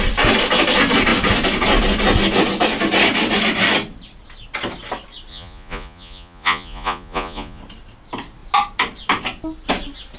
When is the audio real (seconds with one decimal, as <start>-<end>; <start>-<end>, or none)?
0.0-5.3; 7.6-10.2